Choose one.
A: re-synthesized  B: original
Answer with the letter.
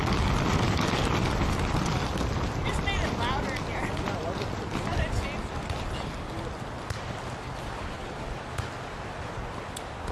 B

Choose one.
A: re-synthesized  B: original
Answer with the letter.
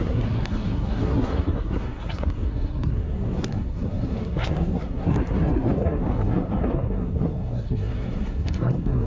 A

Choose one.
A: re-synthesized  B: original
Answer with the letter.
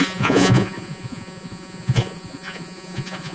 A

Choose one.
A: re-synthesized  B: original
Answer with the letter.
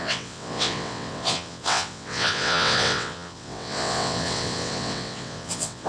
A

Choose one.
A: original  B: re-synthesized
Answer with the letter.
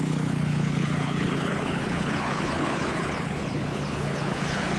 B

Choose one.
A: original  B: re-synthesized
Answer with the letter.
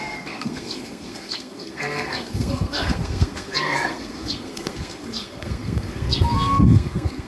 B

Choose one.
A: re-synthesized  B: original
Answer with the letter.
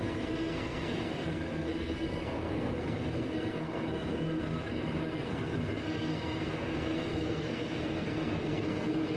A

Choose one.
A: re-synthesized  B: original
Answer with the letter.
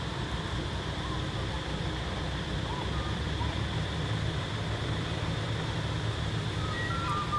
A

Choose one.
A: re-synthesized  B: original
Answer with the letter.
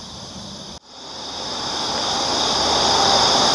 B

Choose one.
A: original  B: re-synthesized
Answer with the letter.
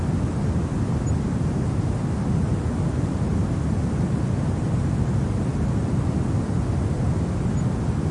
A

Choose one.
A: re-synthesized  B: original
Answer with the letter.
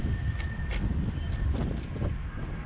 B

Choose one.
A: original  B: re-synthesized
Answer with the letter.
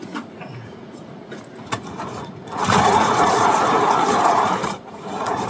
B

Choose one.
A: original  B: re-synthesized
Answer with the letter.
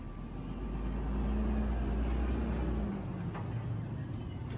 A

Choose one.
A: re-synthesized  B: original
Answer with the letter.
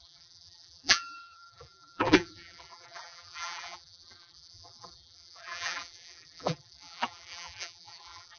A